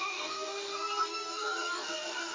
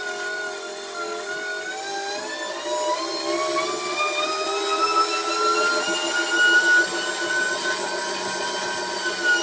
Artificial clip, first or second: first